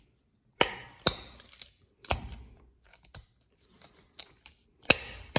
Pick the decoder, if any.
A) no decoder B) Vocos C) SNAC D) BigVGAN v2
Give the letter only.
A